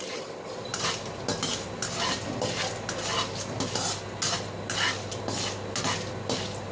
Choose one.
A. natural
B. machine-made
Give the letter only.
A